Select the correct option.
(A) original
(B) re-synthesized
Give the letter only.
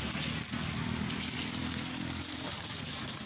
A